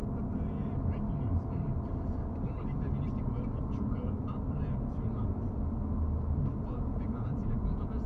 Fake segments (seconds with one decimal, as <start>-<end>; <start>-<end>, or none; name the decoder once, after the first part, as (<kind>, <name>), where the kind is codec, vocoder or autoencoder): 6.5-8.1 (vocoder, Vocos)